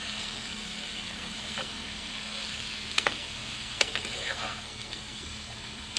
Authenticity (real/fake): fake